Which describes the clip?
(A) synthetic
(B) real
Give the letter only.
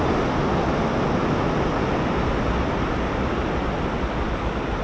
B